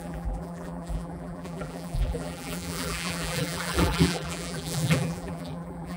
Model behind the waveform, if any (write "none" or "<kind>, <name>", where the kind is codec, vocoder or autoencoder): vocoder, BigVGAN v2